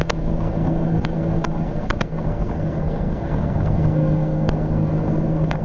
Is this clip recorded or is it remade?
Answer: remade